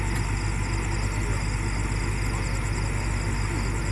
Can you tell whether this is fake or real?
real